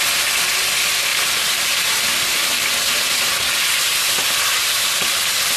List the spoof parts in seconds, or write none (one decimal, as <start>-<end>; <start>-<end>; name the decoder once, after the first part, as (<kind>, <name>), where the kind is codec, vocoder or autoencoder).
1.1-3.5 (vocoder, BigVGAN v2)